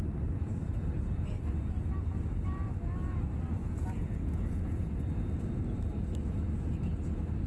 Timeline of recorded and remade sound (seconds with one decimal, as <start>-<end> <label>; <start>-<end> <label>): 0.0-3.6 recorded; 3.6-4.9 remade; 4.9-7.5 recorded